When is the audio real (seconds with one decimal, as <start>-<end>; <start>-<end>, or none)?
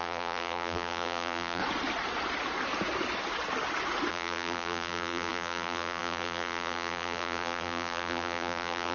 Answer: 1.6-4.1